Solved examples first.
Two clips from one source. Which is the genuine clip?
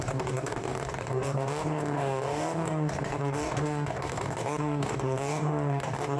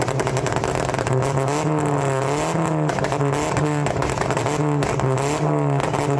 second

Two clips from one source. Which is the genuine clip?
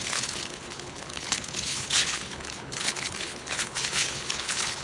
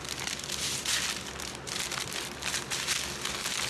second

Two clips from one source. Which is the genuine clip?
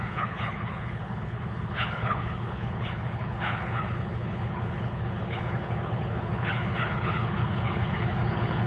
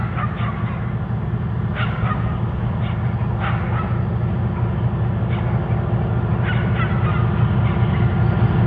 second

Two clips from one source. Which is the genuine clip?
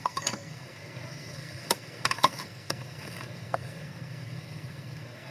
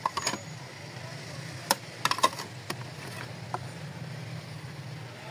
second